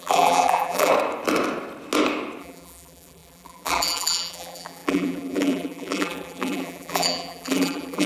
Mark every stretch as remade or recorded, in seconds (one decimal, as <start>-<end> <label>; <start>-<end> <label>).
0.0-0.9 remade; 0.9-2.4 recorded; 2.4-8.1 remade

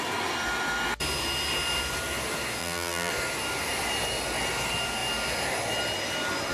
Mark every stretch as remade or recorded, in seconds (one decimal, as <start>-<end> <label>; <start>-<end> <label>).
0.0-2.6 recorded; 2.6-3.1 remade; 3.1-6.5 recorded

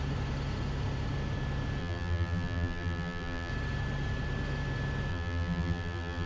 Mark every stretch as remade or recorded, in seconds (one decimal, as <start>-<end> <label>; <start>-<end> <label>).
0.0-1.8 recorded; 1.8-3.5 remade; 3.5-5.1 recorded; 5.1-6.3 remade